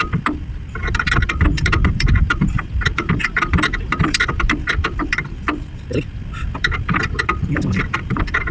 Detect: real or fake fake